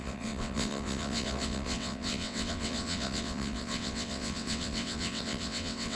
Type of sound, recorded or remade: remade